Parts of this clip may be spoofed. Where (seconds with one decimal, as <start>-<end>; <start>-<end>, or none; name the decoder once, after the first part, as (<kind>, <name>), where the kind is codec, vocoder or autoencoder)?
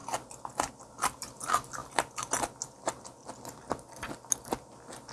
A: none